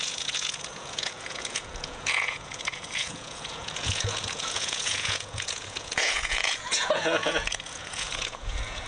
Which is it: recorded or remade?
remade